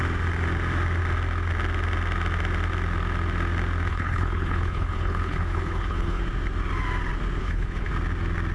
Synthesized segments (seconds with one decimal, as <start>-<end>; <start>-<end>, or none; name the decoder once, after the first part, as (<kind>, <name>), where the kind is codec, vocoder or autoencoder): 3.9-6.2 (codec, HILCodec); 7.4-7.9